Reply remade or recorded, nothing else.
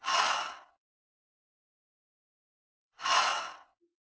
remade